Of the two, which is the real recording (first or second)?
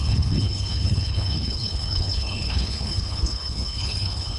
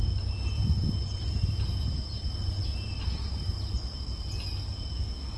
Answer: second